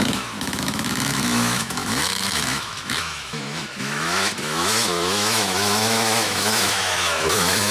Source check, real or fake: fake